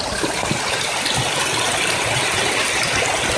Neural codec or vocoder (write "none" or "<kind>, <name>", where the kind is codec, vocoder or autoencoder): none